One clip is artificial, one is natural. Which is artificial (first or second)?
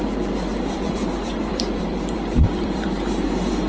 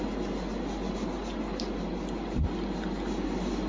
first